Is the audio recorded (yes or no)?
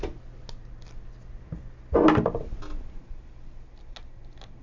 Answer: yes